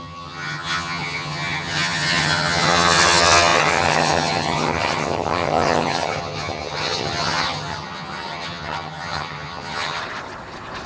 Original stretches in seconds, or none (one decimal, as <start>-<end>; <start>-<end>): 10.0-10.9